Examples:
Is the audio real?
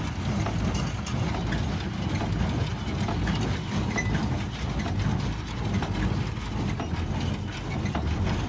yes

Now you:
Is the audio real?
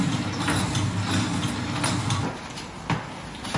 yes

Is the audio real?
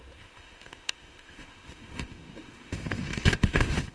no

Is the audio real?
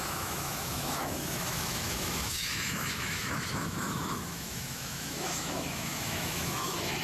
no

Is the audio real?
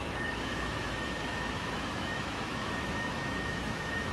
no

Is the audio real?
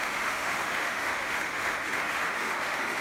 no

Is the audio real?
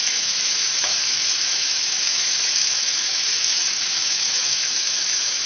no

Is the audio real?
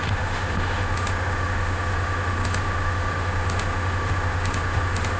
no